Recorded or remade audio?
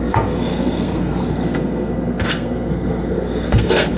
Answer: remade